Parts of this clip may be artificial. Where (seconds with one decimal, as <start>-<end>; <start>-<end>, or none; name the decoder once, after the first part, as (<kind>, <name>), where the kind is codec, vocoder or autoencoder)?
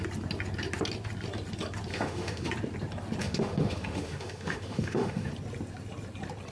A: 1.9-2.5 (autoencoder, DAC-VAE); 3.2-5.3